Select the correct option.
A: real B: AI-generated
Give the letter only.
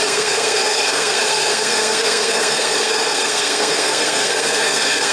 B